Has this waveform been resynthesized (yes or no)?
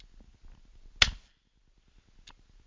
no